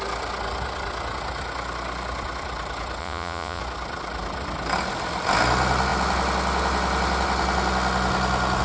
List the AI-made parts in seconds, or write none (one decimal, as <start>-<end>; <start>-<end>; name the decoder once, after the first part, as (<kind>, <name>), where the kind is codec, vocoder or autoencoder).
3.0-3.6 (vocoder, Vocos)